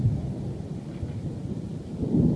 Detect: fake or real real